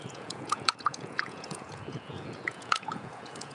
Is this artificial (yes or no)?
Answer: yes